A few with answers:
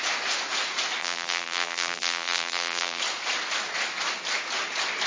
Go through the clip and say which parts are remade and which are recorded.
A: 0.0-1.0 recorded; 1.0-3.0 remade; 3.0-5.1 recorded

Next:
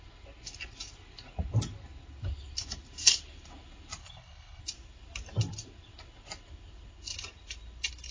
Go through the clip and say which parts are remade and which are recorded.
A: 0.0-4.0 recorded; 4.0-4.6 remade; 4.6-8.1 recorded

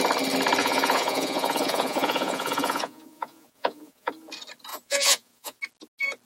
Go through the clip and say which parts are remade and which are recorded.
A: 0.0-0.6 recorded; 0.6-4.1 remade; 4.1-4.7 recorded; 4.7-5.6 remade; 5.6-6.3 recorded